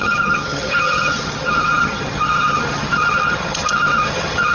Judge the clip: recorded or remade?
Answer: remade